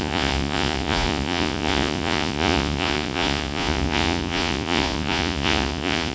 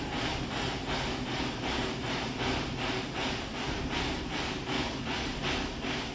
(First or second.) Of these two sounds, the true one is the second